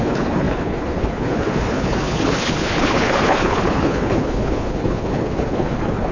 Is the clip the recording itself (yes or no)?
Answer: no